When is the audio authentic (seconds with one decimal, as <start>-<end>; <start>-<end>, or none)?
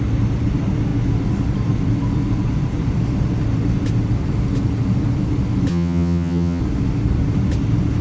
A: 0.0-5.7; 6.6-8.0